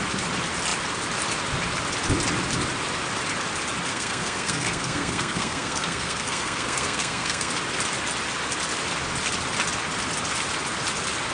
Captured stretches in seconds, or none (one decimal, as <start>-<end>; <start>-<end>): 0.0-3.9; 7.5-11.3